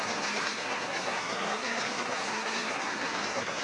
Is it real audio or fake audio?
fake